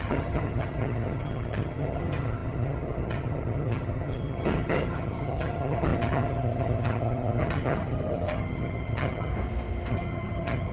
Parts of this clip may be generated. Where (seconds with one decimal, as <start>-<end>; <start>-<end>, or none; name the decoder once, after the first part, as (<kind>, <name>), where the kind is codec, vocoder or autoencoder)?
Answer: 0.0-9.3 (vocoder, HiFi-GAN); 9.9-10.7